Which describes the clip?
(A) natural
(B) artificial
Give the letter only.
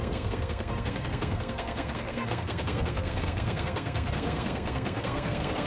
B